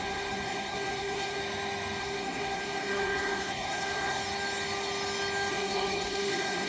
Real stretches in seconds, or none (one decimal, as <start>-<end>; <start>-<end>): 1.4-2.0; 4.2-5.5